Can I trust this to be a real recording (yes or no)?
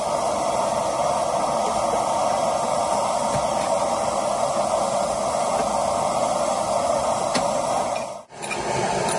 yes